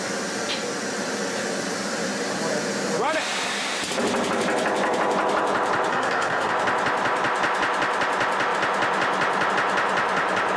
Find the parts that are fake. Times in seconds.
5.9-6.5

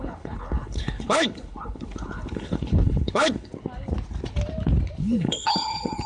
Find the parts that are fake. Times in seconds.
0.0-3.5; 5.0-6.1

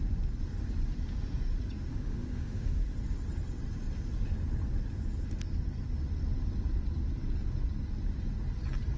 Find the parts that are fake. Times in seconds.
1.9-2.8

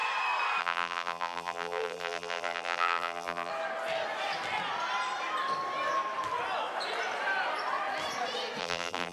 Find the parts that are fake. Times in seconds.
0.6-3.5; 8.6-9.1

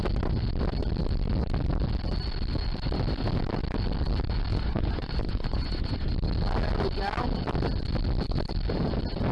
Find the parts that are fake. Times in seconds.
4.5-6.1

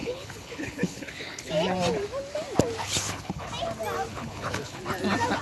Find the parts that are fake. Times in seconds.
0.0-1.5; 2.8-3.5; 4.1-4.8